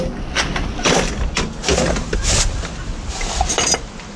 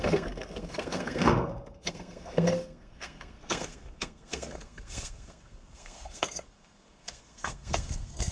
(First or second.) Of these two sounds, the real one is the first